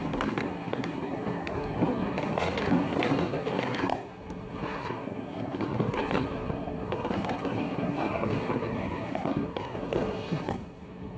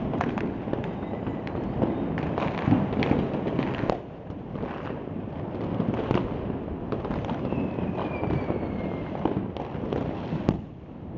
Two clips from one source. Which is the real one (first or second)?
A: second